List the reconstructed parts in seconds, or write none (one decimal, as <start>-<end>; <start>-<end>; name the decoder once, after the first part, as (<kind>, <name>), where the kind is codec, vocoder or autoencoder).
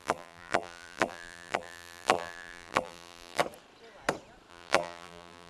0.0-3.4 (vocoder, BigVGAN v2); 4.5-5.5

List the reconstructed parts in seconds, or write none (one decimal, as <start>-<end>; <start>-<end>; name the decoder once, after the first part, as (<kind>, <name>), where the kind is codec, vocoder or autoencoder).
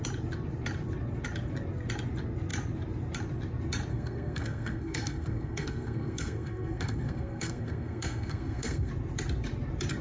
3.9-8.9 (codec, SNAC)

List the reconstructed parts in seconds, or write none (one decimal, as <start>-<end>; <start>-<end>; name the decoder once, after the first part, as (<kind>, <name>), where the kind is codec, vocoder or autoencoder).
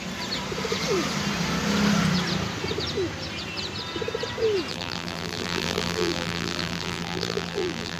4.7-8.0 (vocoder, BigVGAN v2)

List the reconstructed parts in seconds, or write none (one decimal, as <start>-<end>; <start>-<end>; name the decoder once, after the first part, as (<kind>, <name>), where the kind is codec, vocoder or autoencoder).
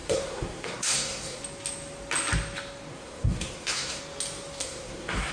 0.0-1.4 (codec, SNAC); 2.9-4.0; 4.6-5.3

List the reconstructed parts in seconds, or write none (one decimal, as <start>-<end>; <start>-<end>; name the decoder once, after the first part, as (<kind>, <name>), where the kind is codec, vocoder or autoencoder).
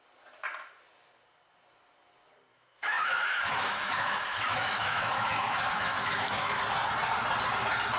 2.5-6.6 (autoencoder, DAC-VAE)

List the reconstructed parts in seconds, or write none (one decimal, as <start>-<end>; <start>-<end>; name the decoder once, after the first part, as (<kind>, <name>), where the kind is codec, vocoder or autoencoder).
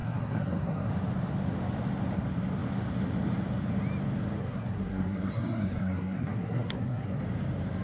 0.0-0.9 (codec, SNAC); 4.4-7.2